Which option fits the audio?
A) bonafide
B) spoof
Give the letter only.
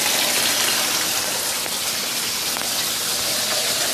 A